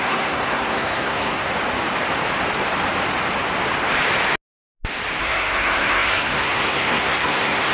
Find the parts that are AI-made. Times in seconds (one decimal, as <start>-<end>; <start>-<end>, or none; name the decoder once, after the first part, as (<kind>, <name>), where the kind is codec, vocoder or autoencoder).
0.0-1.5 (codec, SNAC); 5.2-7.7